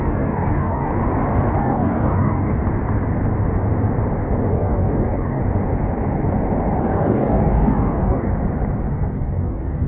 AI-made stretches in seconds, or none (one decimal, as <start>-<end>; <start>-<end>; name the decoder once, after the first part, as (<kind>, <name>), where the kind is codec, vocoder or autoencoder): 0.0-0.9 (codec, DAC); 1.6-2.6; 4.5-5.4; 6.8-8.3; 8.9-9.9